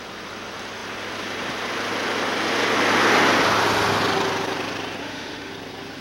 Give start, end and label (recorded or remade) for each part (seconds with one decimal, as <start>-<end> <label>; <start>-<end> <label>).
0.0-5.0 recorded; 5.0-5.5 remade; 5.5-6.0 recorded